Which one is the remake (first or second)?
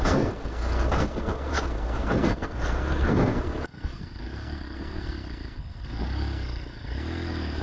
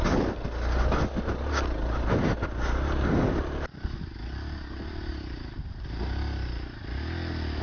first